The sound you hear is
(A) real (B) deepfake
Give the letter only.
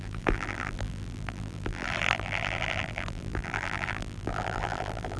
B